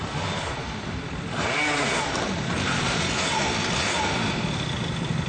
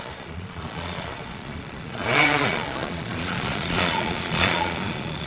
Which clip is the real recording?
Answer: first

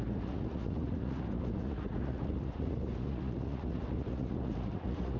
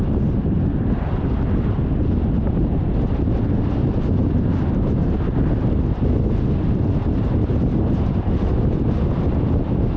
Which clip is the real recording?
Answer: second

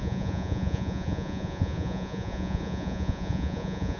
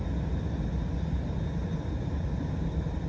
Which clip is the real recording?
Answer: second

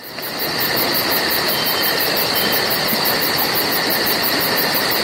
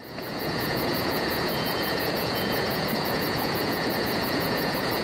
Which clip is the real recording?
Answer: first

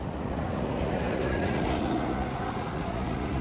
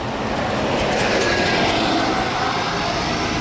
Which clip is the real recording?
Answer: second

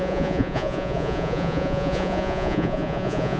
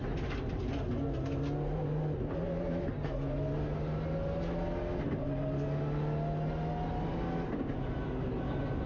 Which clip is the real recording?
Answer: second